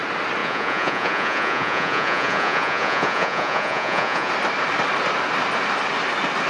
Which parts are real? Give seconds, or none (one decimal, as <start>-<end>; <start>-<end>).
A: 0.0-0.4; 4.3-6.5